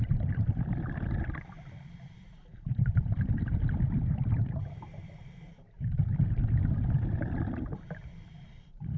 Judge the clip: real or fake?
fake